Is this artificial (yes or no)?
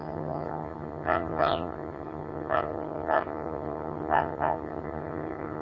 yes